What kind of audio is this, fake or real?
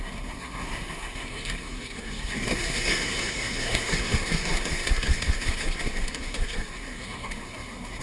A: fake